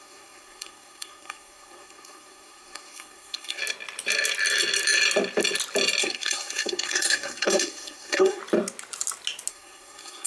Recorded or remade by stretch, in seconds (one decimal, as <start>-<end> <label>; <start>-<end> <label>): 0.0-3.6 remade; 3.6-6.0 recorded; 6.0-8.4 remade; 8.4-9.5 recorded; 9.5-10.3 remade